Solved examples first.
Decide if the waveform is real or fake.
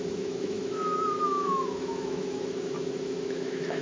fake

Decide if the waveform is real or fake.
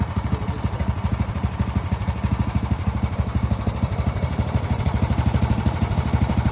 fake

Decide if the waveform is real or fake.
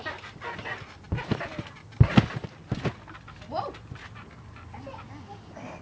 real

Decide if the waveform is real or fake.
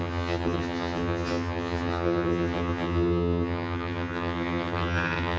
fake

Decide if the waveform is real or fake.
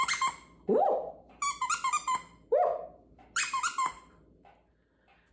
real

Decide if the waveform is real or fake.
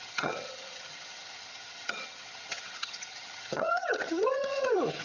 fake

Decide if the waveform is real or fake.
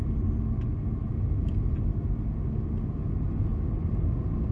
real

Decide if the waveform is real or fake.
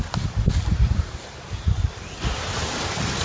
real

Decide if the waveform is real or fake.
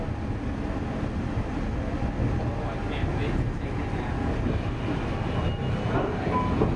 real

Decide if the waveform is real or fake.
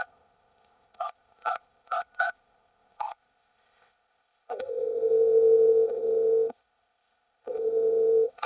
fake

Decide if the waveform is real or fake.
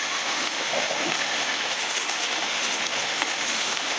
fake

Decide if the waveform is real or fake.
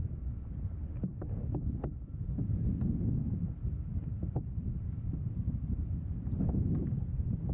real